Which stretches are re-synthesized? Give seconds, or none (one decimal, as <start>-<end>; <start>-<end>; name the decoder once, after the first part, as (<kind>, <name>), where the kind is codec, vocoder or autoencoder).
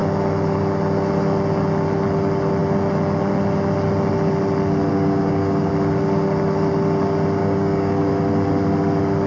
4.9-5.7 (codec, DAC); 7.4-8.1